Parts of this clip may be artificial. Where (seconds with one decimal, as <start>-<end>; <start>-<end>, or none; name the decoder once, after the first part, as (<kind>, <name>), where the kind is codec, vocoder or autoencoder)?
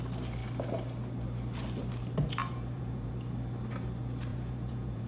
2.4-3.1 (vocoder, Vocos); 4.3-5.1